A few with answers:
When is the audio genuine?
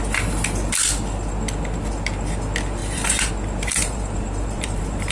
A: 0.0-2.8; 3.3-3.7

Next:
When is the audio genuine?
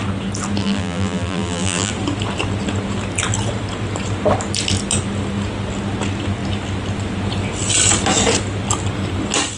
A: 0.0-0.6; 1.9-9.6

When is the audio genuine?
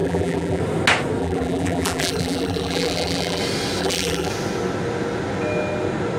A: 0.6-1.2; 3.4-3.8; 4.3-6.2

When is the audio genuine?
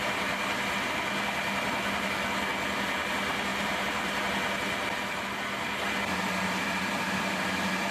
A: 0.0-3.5; 4.3-7.9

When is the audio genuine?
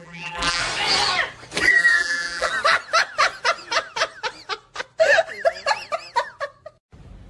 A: 0.6-1.7; 2.5-7.3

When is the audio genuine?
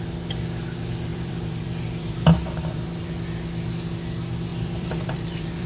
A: 0.0-1.1; 3.1-4.5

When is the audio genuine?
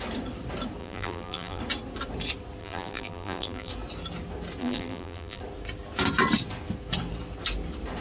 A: 0.0-0.8; 1.6-2.6; 3.7-4.6; 5.4-8.0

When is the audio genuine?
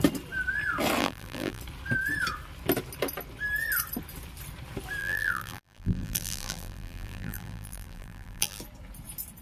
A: 0.0-1.0; 1.6-5.0; 8.6-9.4